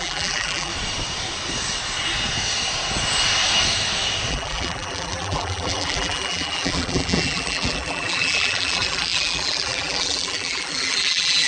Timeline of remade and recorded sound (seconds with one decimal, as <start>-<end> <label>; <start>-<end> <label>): 0.0-0.7 remade; 0.7-4.3 recorded; 4.3-11.5 remade